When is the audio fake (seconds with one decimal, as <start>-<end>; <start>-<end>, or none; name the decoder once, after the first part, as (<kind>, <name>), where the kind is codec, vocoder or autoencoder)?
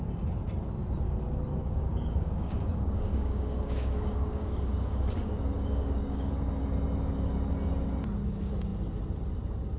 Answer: 1.6-6.5 (codec, DAC)